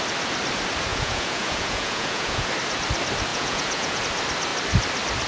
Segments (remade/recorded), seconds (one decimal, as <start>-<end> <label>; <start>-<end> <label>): 0.0-0.9 recorded; 0.9-2.5 remade; 2.5-3.3 recorded; 3.3-4.0 remade; 4.0-5.3 recorded